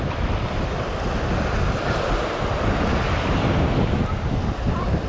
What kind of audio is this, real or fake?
real